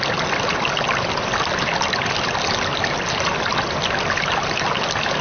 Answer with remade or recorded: recorded